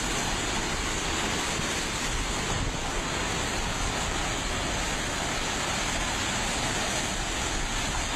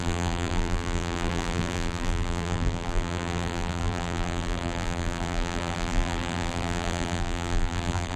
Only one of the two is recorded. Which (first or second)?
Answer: first